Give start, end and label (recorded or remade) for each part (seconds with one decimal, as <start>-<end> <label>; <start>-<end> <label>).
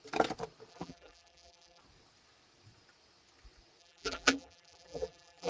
0.0-0.7 recorded; 0.7-1.8 remade; 1.8-3.8 recorded; 3.8-5.5 remade